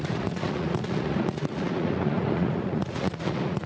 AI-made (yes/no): yes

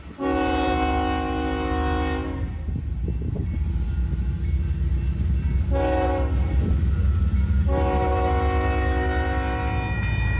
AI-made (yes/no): no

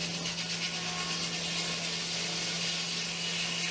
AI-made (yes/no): no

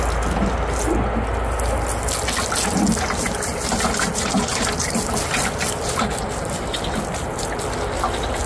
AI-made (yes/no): no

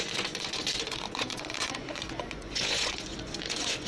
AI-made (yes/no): yes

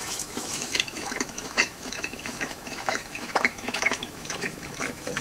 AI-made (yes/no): yes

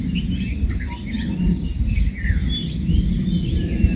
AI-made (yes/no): no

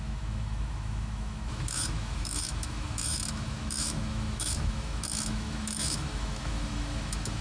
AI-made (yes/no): yes